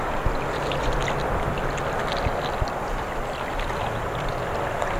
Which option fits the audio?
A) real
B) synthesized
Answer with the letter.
A